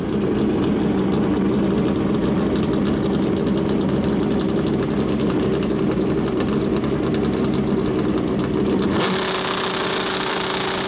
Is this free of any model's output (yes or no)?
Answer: yes